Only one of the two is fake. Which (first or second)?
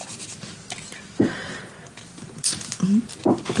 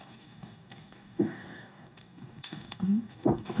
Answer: second